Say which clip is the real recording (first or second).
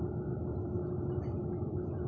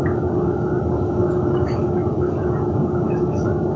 first